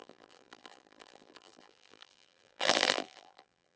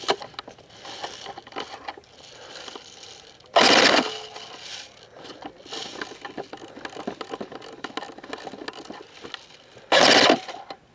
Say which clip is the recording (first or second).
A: second